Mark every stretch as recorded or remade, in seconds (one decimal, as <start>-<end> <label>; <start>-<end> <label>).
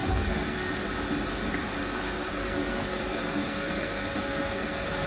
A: 0.0-0.7 remade; 0.7-1.8 recorded; 1.8-5.1 remade